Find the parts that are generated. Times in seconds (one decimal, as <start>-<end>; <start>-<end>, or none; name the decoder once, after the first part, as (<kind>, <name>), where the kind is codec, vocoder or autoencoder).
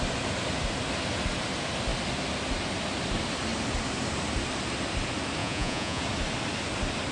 5.4-6.0 (vocoder, Vocos)